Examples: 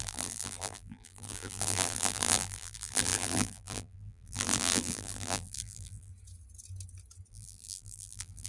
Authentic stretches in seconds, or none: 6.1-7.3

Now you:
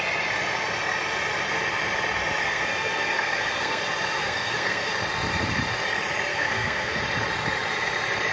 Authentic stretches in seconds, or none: 0.0-2.4; 3.8-4.2; 4.9-6.3; 7.0-8.3

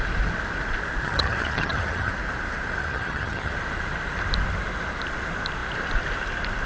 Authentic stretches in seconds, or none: 0.0-1.0; 2.1-2.8; 3.5-6.7

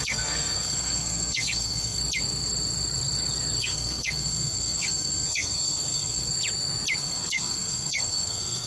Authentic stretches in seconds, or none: 2.0-3.6; 6.3-7.0

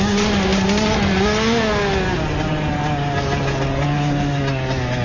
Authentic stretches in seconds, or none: 0.0-5.0

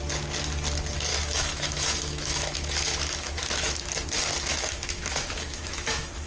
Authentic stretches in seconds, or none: 0.0-1.1; 3.9-4.5

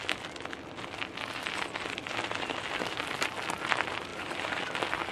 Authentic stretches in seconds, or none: 0.0-4.1; 4.6-5.1

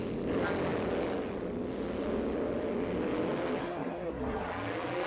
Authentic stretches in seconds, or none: 0.0-3.6; 4.5-5.1